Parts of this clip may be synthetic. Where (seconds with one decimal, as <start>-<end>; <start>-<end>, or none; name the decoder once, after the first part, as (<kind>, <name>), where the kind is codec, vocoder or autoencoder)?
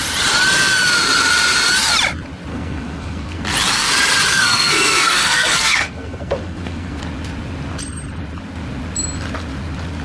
2.5-3.4 (codec, SNAC); 4.3-7.0